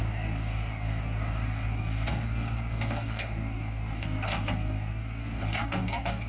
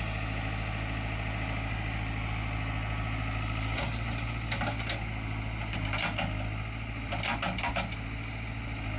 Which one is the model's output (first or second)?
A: first